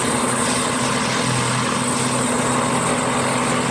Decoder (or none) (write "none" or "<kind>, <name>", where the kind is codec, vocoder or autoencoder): none